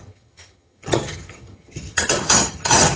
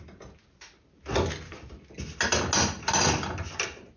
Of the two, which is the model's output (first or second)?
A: first